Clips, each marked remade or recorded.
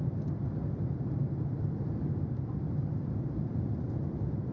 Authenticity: recorded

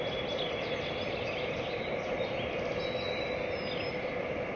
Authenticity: recorded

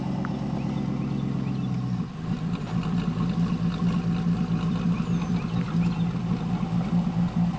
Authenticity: recorded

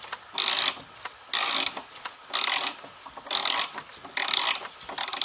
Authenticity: recorded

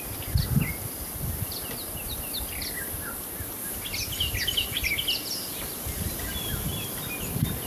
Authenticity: recorded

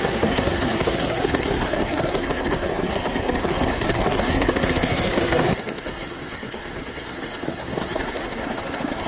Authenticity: remade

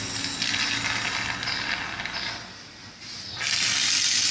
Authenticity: recorded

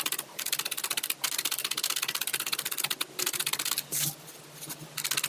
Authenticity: recorded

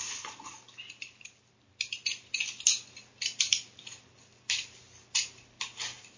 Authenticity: recorded